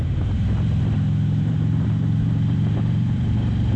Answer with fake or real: fake